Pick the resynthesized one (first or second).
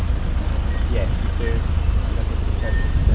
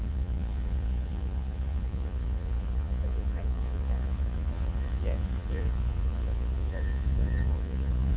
second